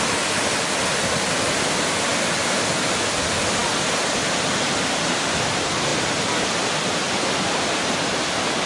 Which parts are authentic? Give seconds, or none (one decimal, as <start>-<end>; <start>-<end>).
0.0-8.7